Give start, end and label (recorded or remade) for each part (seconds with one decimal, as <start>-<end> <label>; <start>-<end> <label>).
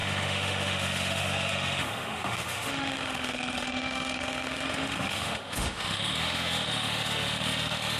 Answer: 0.0-8.0 remade